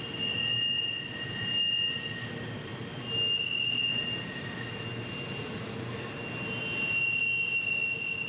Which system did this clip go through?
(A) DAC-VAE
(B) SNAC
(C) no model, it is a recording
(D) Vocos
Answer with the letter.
C